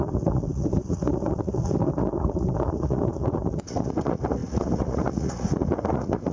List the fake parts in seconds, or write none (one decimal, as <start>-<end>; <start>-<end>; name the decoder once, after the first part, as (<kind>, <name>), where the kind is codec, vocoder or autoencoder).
0.0-6.3 (vocoder, Vocos)